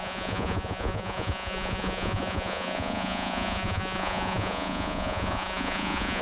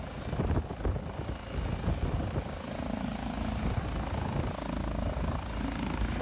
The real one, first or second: second